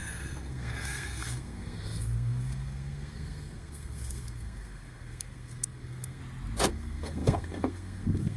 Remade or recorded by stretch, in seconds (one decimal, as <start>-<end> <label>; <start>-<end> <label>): 0.0-6.2 remade; 6.2-6.7 recorded; 6.7-8.4 remade